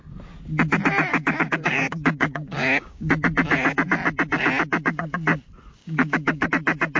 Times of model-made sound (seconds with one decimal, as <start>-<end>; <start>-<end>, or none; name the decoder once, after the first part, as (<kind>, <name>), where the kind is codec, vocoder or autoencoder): 1.1-3.1 (codec, DAC); 5.8-6.5